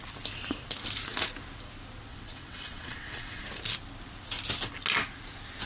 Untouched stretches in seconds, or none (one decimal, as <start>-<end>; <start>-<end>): 0.0-2.1; 3.4-5.7